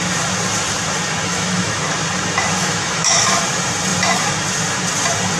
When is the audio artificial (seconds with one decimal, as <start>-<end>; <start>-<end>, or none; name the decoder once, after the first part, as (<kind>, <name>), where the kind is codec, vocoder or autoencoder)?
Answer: 1.3-1.8 (autoencoder, DAC-VAE); 2.6-3.4